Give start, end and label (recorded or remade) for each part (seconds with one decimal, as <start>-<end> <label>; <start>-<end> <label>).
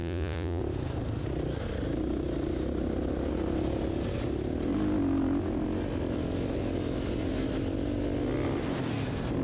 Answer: 0.0-0.6 remade; 0.6-9.4 recorded